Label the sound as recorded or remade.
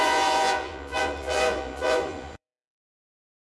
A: remade